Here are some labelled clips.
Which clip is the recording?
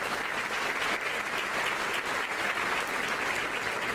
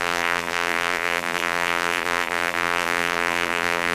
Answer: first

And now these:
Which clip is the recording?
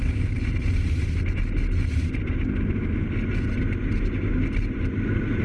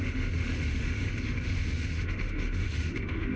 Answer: first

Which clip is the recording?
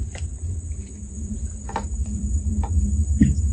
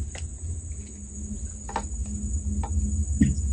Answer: second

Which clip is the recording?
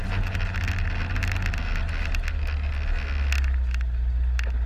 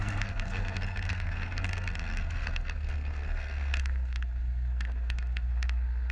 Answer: first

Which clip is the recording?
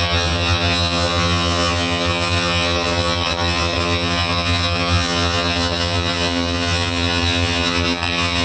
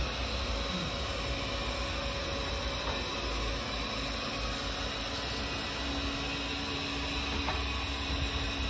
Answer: second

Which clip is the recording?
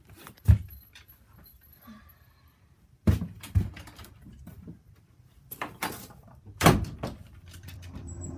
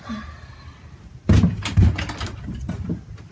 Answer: second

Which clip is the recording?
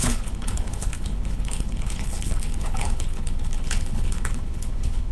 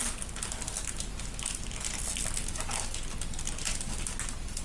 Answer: second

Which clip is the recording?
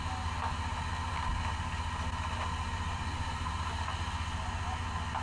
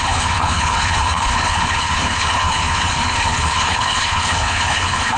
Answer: first